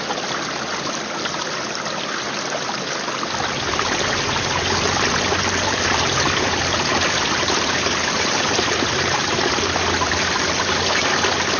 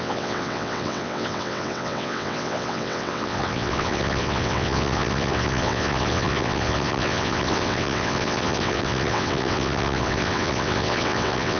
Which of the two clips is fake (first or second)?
second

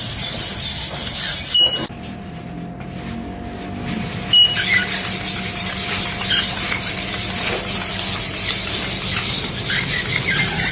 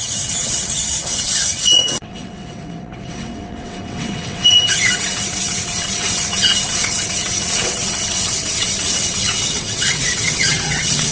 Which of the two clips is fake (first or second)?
second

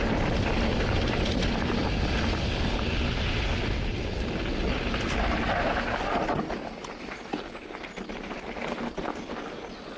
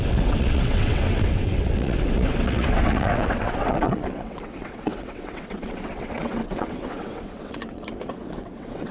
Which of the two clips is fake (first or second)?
second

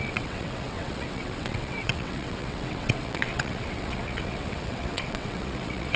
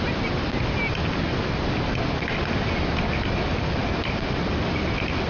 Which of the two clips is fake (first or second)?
first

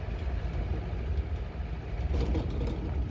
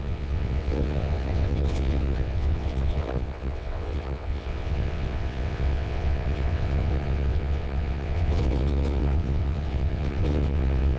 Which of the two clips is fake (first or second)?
second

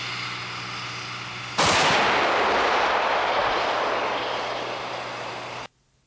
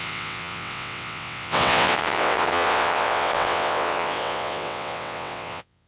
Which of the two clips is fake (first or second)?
second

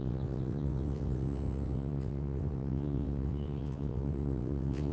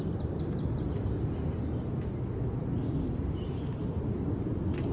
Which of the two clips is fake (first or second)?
first